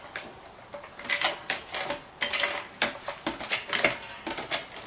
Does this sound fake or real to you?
real